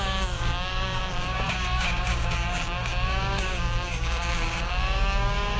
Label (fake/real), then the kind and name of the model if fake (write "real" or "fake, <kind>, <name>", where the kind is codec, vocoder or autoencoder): fake, codec, DAC